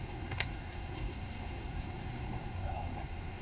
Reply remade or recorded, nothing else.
remade